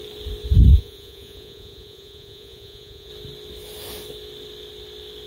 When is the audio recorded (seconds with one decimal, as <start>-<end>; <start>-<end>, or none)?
0.0-0.7; 3.1-5.3